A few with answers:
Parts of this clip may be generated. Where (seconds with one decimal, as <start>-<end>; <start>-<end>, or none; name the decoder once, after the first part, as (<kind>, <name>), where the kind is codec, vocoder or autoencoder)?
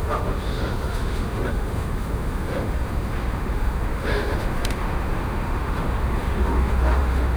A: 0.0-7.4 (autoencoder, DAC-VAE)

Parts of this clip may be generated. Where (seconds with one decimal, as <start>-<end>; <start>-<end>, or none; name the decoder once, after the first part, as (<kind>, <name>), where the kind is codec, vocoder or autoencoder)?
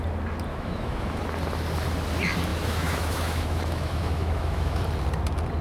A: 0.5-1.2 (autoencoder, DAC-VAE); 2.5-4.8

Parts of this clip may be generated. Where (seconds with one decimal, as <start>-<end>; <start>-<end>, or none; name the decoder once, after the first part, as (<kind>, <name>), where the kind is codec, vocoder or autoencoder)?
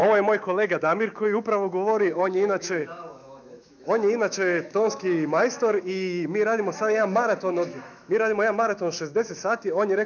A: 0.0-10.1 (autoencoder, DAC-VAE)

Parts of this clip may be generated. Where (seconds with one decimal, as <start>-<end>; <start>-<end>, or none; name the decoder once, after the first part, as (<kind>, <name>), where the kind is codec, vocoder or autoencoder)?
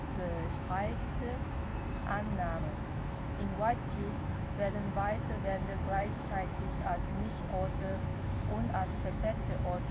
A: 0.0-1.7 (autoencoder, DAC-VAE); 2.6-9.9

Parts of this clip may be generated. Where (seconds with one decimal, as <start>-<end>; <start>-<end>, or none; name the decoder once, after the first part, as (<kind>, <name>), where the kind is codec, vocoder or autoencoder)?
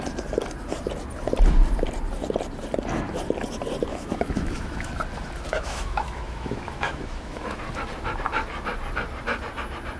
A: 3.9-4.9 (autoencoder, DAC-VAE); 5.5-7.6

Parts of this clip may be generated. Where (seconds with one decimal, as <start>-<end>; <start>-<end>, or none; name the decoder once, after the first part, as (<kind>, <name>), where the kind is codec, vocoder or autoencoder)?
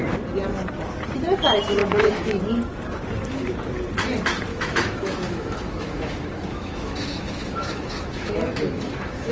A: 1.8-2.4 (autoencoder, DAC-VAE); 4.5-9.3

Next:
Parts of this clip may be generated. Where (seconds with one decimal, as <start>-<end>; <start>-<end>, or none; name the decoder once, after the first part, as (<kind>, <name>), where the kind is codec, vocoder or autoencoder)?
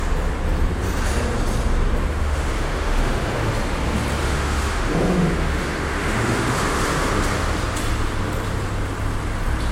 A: 2.2-3.5 (autoencoder, DAC-VAE); 4.2-7.1